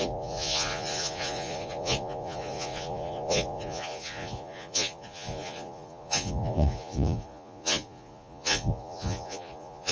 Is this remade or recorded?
remade